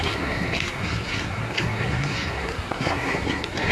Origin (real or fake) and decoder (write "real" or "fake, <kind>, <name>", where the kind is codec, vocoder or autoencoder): fake, codec, SNAC